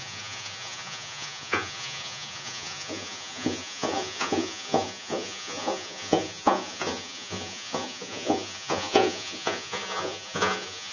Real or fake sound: fake